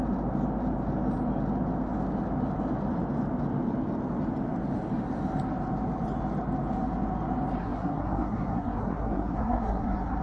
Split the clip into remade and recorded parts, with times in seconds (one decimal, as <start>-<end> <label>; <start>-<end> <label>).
0.0-7.6 recorded; 7.6-10.2 remade